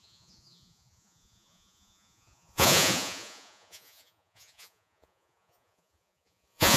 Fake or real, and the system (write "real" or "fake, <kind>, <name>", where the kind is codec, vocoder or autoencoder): fake, vocoder, Vocos